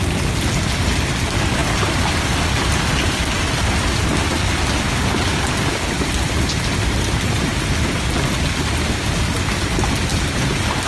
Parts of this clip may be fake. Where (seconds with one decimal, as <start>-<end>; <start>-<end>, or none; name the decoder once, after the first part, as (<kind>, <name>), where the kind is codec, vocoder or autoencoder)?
none